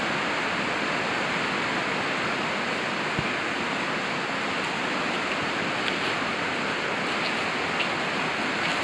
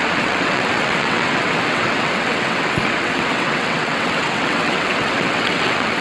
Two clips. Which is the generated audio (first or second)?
second